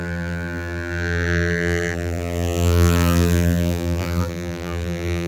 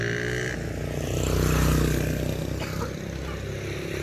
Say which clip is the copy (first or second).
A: first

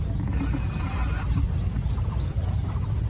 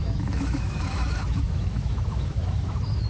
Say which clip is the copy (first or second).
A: second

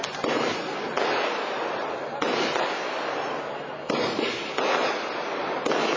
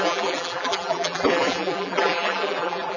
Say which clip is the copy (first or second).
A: second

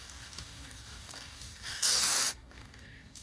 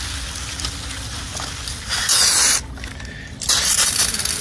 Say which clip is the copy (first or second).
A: first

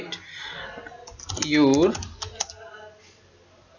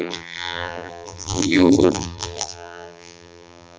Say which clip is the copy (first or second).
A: second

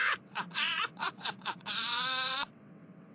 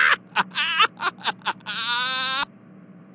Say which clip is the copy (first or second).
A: first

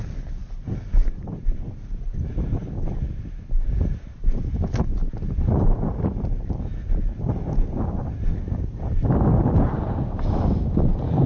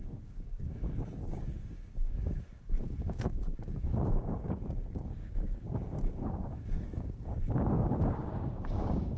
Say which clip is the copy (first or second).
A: second